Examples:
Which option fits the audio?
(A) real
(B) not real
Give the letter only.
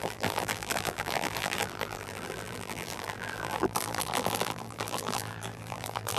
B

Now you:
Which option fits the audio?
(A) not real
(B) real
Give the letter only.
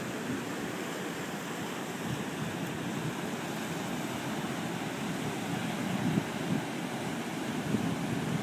B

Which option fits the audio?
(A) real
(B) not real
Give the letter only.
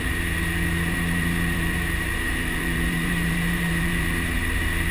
B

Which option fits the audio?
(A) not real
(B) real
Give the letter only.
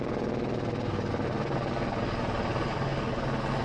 B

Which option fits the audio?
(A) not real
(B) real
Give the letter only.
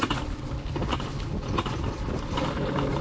B